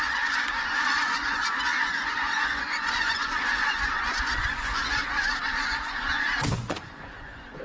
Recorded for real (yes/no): no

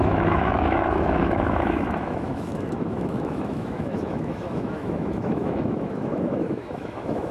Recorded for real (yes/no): no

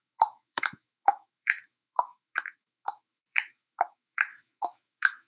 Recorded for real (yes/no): no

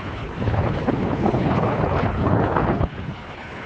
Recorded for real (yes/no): no